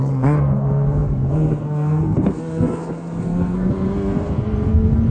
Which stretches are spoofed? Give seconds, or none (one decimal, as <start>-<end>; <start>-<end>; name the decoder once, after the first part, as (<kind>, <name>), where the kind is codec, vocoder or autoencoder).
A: 0.0-5.1 (codec, SNAC)